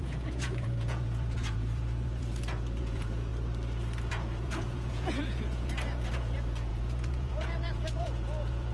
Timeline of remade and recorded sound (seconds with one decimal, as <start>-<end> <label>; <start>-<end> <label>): 0.0-3.3 remade; 3.3-4.1 recorded; 4.1-8.7 remade